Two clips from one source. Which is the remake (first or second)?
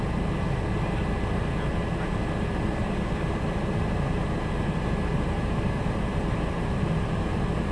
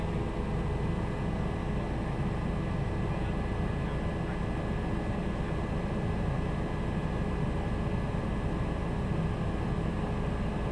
first